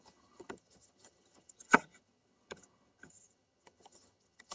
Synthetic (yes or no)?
yes